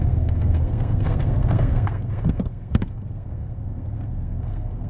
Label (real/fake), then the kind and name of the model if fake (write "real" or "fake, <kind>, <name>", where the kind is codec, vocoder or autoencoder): fake, codec, SNAC